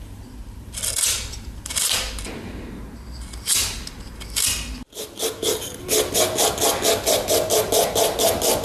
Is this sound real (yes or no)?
yes